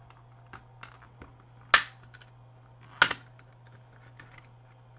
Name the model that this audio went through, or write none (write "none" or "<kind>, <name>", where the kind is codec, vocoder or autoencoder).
none